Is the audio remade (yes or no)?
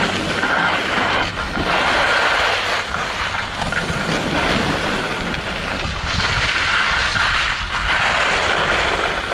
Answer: no